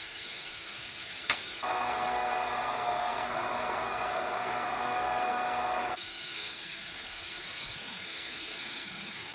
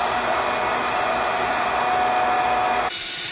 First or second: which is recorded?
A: second